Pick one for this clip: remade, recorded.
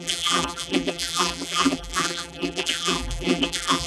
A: remade